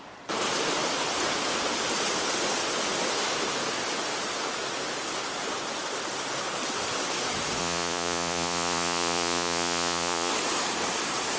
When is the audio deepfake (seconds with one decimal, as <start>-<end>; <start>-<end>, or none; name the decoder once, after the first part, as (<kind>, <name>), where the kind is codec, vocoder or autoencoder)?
7.6-10.3 (vocoder, Vocos)